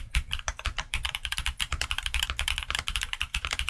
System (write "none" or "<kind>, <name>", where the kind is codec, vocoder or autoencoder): vocoder, BigVGAN v2